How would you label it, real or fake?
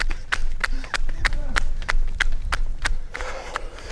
real